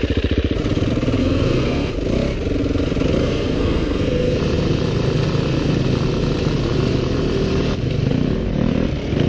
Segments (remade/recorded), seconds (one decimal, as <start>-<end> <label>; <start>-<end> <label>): 0.0-1.2 recorded; 1.2-1.9 remade; 1.9-3.2 recorded; 3.2-4.4 remade; 4.4-9.3 recorded